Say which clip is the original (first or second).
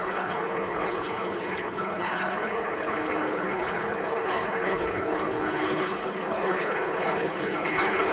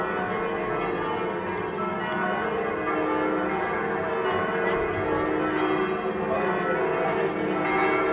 second